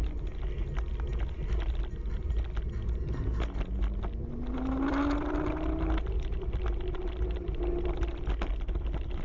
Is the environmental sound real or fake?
real